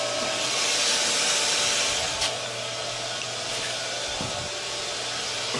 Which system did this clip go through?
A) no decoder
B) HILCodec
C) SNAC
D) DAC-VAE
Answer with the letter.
A